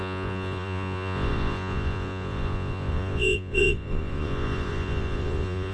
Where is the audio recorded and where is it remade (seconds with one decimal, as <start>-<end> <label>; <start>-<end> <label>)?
0.0-5.7 remade